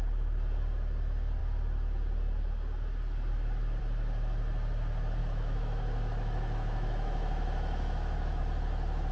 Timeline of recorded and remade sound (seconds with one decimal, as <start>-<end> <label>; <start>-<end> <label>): 0.0-5.2 recorded; 5.2-8.4 remade; 8.4-9.1 recorded